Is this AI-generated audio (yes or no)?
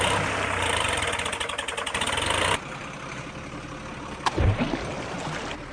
no